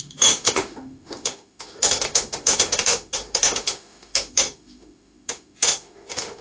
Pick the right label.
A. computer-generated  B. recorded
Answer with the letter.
A